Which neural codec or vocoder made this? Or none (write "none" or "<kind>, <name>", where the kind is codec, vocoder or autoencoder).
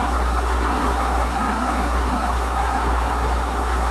codec, SNAC